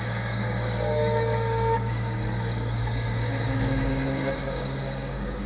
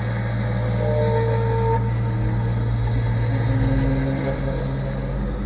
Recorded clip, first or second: second